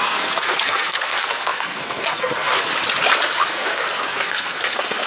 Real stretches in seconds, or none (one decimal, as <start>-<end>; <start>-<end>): 2.7-3.5